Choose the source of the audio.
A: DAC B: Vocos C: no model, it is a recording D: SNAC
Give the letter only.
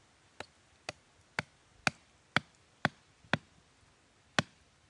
C